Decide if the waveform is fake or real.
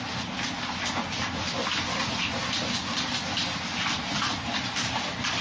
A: real